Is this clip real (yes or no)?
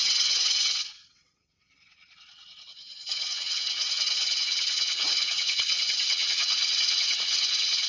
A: no